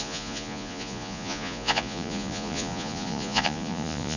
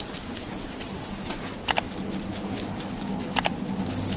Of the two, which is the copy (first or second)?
first